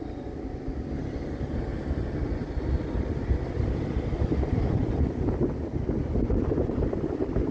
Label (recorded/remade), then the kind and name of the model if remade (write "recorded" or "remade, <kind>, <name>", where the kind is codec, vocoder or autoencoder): recorded